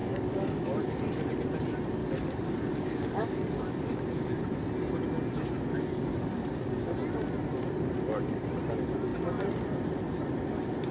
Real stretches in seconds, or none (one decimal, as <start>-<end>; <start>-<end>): 1.0-2.0; 4.0-5.7; 6.8-10.9

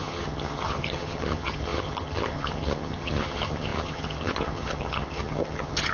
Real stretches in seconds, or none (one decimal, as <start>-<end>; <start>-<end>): none

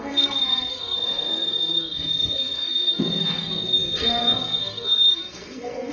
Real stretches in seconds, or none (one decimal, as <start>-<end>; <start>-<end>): none

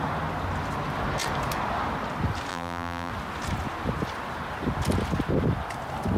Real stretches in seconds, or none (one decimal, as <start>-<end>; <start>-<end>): 0.0-2.5; 3.1-6.2

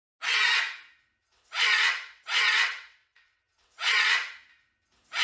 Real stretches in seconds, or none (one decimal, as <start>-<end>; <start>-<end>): 0.0-1.2; 4.3-5.2

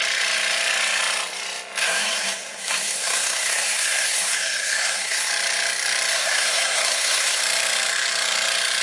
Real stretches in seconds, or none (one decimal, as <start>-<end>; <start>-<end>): 0.0-1.8; 5.3-6.1; 7.4-8.8

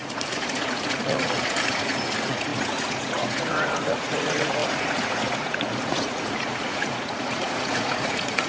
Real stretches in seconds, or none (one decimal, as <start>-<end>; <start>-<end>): none

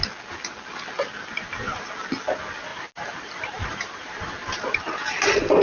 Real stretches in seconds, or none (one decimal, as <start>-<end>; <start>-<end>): 0.0-2.7; 4.3-5.6